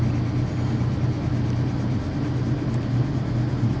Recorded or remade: recorded